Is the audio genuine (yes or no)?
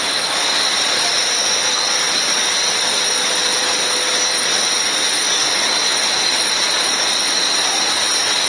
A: yes